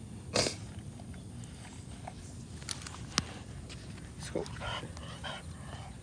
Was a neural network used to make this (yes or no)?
no